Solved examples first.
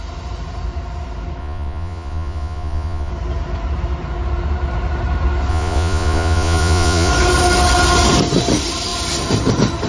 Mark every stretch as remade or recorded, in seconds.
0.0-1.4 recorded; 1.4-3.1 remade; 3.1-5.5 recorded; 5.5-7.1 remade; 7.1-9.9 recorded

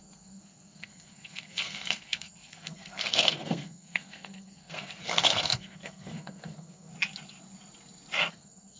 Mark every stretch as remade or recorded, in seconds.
0.0-6.9 remade; 6.9-8.3 recorded; 8.3-8.8 remade

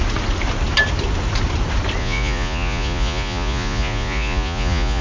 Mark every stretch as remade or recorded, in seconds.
0.0-2.0 recorded; 2.0-5.0 remade

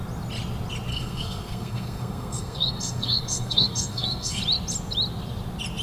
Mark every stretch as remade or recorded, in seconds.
0.0-0.9 recorded; 0.9-4.4 remade; 4.4-5.8 recorded

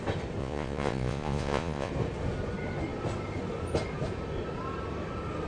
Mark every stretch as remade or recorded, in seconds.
0.0-0.4 recorded; 0.4-1.9 remade; 1.9-5.5 recorded

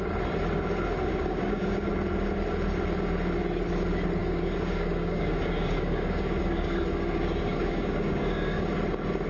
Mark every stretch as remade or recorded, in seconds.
0.0-1.1 recorded; 1.1-1.9 remade; 1.9-4.2 recorded; 4.2-8.7 remade; 8.7-9.3 recorded

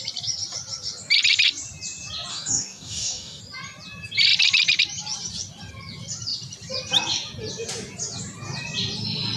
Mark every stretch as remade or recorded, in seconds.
0.0-2.3 recorded; 2.3-3.4 remade; 3.4-9.4 recorded